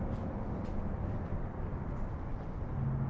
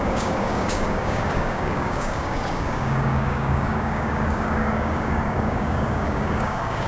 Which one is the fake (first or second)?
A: second